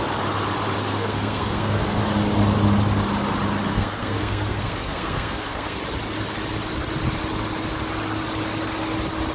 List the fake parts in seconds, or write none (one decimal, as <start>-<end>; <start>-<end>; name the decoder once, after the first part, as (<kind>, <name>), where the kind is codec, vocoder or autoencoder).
0.9-2.0 (codec, SNAC); 3.7-5.8